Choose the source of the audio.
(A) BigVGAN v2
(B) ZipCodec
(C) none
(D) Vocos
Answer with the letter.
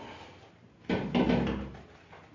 C